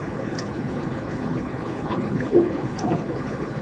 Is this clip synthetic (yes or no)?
yes